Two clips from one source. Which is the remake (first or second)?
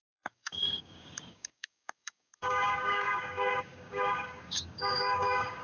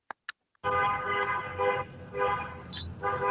first